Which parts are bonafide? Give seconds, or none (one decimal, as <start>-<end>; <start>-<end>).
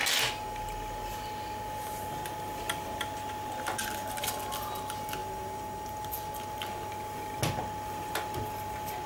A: 0.0-9.1